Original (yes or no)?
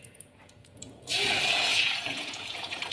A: no